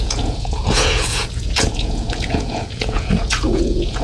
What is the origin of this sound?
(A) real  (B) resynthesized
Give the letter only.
B